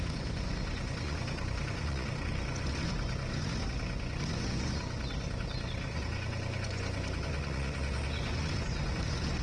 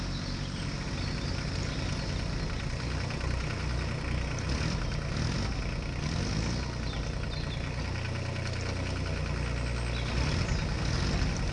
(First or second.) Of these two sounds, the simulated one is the first